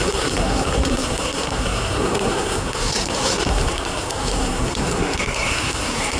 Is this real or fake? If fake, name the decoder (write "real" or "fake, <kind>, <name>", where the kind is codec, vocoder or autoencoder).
fake, codec, SNAC